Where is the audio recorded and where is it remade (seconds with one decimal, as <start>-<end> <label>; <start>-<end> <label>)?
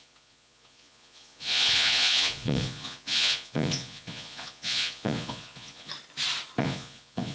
0.0-5.9 remade; 5.9-6.6 recorded; 6.6-7.3 remade